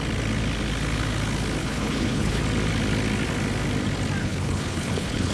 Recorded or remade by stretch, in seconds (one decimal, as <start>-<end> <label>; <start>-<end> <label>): 0.0-1.6 recorded; 1.6-2.4 remade; 2.4-4.2 recorded; 4.2-5.3 remade